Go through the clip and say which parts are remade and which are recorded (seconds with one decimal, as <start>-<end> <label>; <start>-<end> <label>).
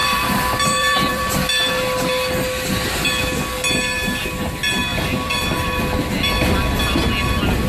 0.0-1.7 remade; 1.7-4.9 recorded; 4.9-6.2 remade; 6.2-7.7 recorded